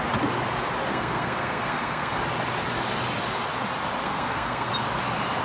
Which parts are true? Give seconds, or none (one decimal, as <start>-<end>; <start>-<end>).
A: 0.0-0.9; 2.2-4.0; 4.7-5.4